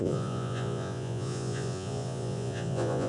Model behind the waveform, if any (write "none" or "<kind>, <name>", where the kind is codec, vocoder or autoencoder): vocoder, Vocos